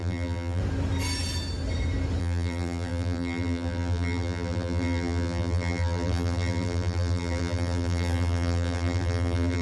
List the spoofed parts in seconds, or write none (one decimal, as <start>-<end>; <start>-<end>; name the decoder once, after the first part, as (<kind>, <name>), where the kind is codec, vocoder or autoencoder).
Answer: 0.0-0.6 (vocoder, BigVGAN v2); 2.2-9.6